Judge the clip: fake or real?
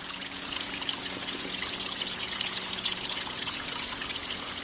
fake